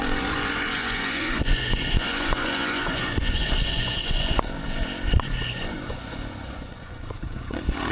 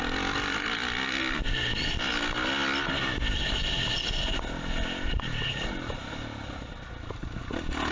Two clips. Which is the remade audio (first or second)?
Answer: first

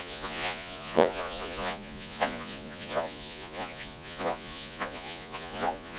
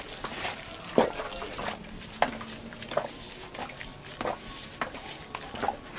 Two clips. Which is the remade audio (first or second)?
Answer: first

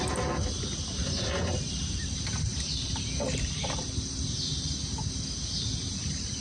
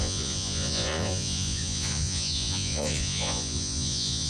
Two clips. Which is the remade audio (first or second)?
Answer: second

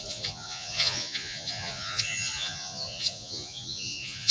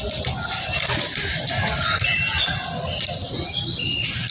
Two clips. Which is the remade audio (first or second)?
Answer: first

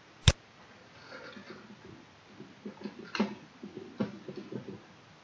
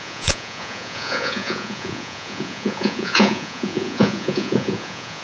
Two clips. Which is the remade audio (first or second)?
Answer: second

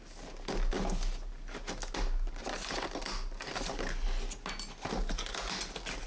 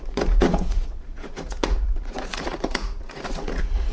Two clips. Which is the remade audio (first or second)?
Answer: second